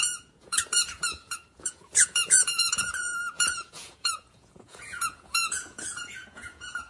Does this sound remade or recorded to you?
remade